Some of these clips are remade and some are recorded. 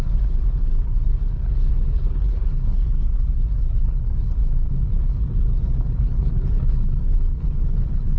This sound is remade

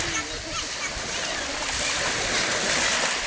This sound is recorded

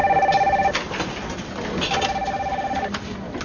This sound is recorded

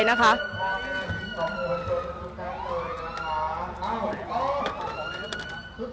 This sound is recorded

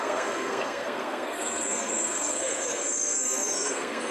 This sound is remade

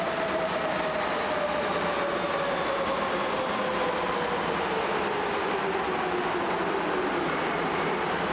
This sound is recorded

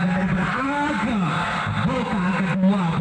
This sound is recorded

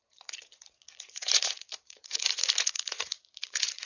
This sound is remade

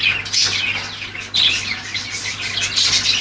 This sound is recorded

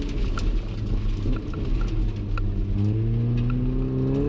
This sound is recorded